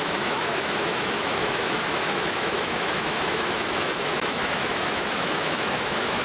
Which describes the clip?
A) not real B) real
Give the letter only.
A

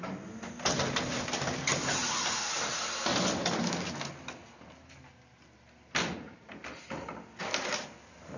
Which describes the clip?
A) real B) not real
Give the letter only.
A